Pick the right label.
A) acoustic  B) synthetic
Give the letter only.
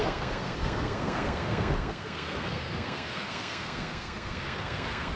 B